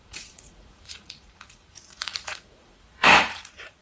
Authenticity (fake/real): fake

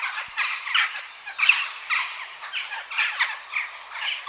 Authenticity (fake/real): fake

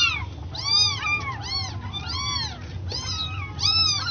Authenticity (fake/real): real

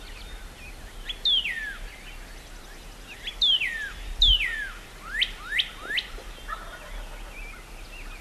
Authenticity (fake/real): real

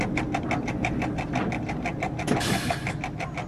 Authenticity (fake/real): real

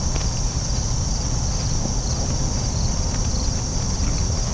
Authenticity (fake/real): real